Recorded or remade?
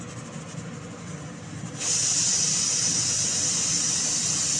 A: recorded